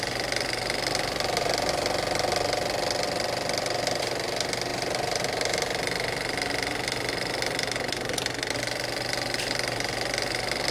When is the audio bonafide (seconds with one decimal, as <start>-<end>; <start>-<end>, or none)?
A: 0.0-10.7